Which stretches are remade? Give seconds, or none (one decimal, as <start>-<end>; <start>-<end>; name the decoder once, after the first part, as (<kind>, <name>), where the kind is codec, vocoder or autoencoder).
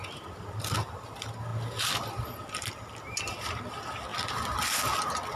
none